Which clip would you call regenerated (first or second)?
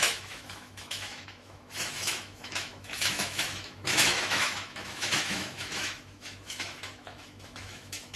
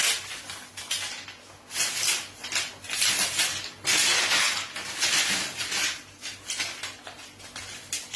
first